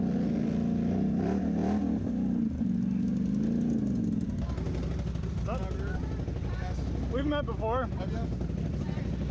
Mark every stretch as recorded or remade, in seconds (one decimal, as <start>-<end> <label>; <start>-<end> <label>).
0.0-9.3 recorded

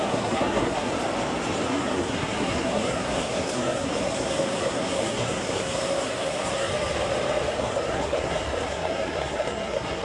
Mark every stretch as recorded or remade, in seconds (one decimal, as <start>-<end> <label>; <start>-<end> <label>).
0.0-0.9 remade; 0.9-1.7 recorded; 1.7-6.7 remade; 6.7-7.5 recorded; 7.5-10.0 remade

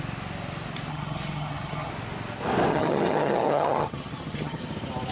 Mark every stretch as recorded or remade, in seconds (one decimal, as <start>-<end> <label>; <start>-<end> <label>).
0.0-0.9 recorded; 0.9-1.9 remade; 1.9-2.7 recorded; 2.7-4.6 remade; 4.6-5.1 recorded

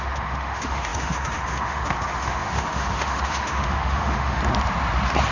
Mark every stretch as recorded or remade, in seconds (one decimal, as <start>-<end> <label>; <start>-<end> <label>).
0.0-4.4 remade; 4.4-5.3 recorded

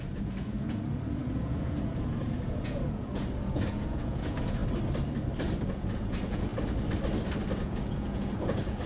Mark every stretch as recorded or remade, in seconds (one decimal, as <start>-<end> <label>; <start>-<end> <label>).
0.0-4.6 remade; 4.6-5.7 recorded; 5.7-6.5 remade; 6.5-7.6 recorded; 7.6-8.9 remade

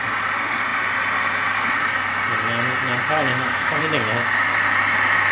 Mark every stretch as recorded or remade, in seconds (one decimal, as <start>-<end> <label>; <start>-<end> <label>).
0.0-3.3 recorded; 3.3-3.8 remade; 3.8-5.3 recorded